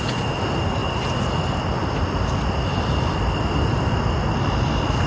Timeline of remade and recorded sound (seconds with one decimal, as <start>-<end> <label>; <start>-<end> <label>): 0.0-5.1 recorded